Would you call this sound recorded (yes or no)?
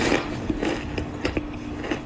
yes